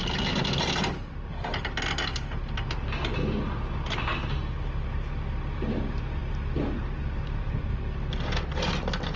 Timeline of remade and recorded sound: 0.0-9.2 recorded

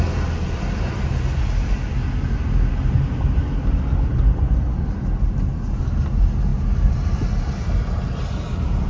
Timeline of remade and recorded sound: 0.0-8.9 recorded

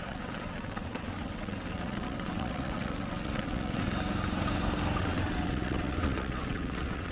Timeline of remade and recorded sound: 0.0-3.9 remade; 3.9-5.0 recorded; 5.0-7.1 remade

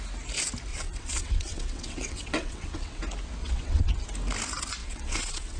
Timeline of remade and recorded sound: 0.0-0.7 recorded; 0.7-3.0 remade; 3.0-3.4 recorded; 3.4-4.0 remade; 4.0-4.8 recorded; 4.8-5.6 remade